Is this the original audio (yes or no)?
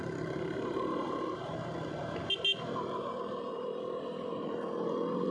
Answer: no